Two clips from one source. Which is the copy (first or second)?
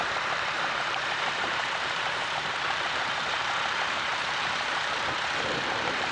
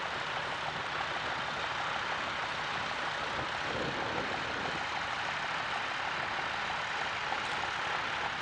first